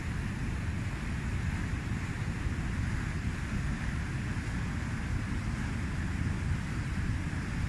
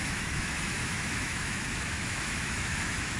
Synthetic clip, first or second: second